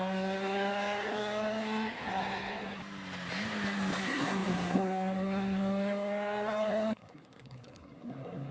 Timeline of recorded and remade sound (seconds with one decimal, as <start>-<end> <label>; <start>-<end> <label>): 0.0-2.8 remade; 2.8-4.0 recorded; 4.0-8.5 remade